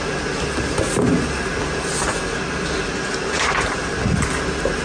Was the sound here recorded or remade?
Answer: recorded